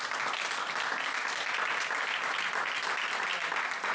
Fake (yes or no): no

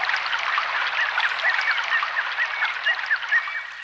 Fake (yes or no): no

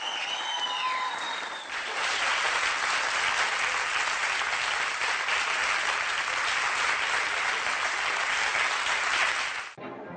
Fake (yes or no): no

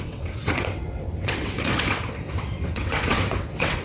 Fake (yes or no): yes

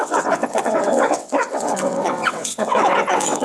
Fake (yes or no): yes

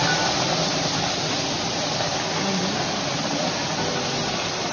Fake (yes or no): no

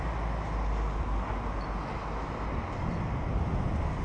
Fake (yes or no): no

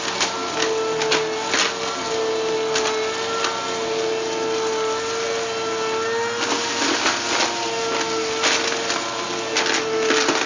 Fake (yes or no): no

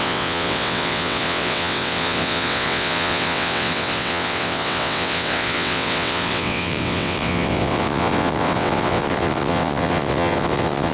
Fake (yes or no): yes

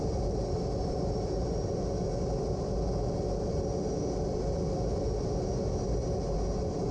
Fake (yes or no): no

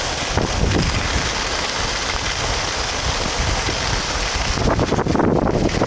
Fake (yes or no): no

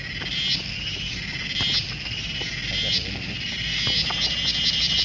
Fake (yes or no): no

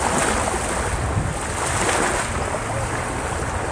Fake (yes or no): no